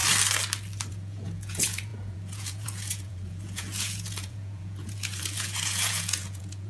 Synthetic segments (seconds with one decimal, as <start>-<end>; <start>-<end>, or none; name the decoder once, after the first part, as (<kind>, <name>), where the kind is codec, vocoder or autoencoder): 0.9-6.7 (vocoder, Vocos)